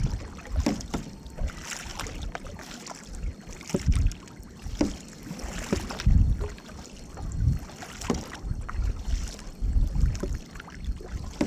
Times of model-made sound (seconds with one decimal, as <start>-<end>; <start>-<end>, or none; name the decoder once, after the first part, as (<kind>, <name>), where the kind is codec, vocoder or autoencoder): 1.9-2.8 (vocoder, BigVGAN v2)